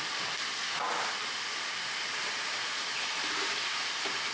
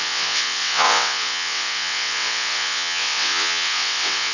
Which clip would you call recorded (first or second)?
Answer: first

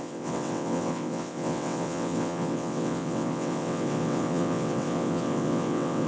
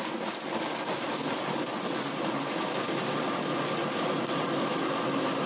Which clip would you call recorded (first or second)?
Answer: second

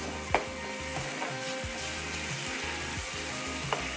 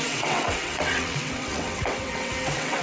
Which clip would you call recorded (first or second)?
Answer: first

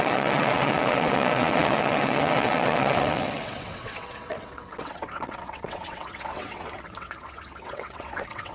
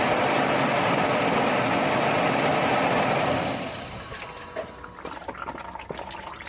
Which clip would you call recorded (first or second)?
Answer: second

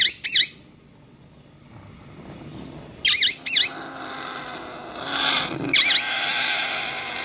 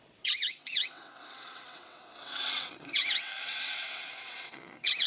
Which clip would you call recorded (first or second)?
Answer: first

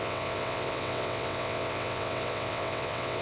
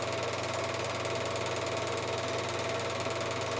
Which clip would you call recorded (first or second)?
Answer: second